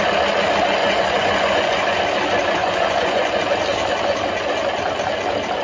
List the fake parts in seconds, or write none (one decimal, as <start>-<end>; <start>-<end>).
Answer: 0.8-2.0; 2.6-3.3